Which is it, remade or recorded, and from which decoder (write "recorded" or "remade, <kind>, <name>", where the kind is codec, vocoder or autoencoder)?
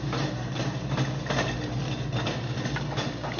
recorded